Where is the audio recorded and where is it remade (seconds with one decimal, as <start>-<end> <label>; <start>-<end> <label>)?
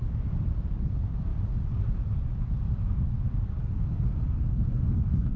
0.0-3.6 recorded; 3.6-5.4 remade